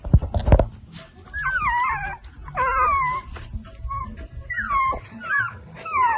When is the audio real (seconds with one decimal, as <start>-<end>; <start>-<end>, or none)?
0.4-1.3; 2.4-4.0